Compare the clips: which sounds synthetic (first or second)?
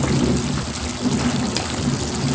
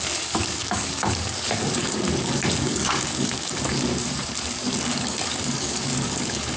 second